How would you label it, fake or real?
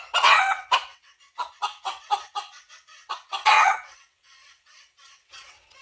fake